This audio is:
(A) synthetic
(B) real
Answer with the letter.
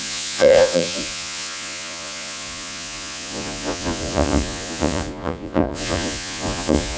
A